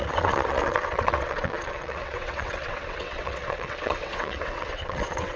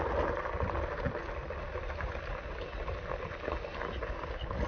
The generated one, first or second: first